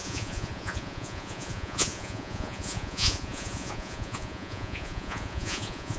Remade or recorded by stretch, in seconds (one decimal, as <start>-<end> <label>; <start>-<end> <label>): 0.0-6.0 remade